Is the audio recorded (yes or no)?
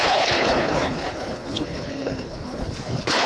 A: no